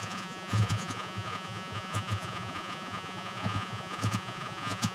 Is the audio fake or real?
fake